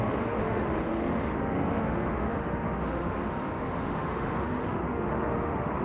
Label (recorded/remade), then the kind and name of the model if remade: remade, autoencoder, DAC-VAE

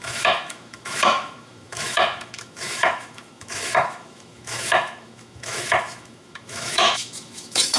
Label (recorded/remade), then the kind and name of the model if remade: remade, autoencoder, DAC-VAE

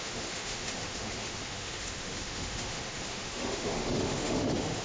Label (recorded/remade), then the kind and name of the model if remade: remade, autoencoder, DAC-VAE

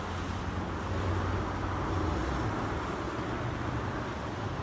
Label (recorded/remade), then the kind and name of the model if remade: recorded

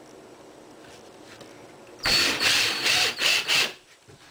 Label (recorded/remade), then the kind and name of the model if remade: recorded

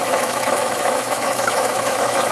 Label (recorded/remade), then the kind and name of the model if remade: remade, autoencoder, DAC-VAE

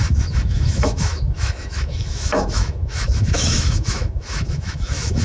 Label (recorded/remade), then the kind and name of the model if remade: remade, autoencoder, DAC-VAE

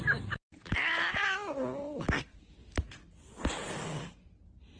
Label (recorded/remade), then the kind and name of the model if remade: recorded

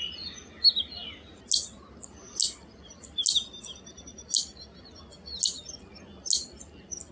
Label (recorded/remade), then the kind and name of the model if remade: recorded